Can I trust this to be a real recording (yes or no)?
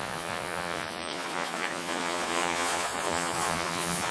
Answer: no